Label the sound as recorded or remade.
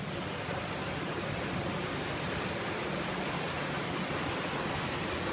recorded